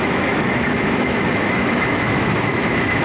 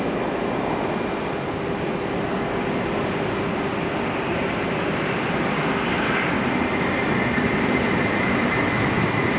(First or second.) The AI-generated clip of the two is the first